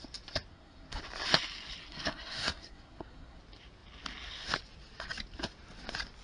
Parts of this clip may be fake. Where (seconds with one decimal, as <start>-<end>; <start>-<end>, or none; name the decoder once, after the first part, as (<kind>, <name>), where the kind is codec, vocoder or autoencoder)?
0.5-1.0 (codec, SNAC); 1.8-3.4